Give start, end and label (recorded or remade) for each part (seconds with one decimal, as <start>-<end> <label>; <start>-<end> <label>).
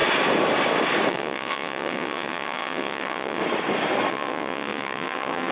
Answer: 0.0-1.1 recorded; 1.1-3.4 remade; 3.4-4.1 recorded; 4.1-5.5 remade